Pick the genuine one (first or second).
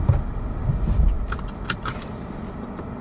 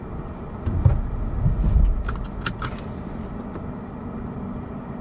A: second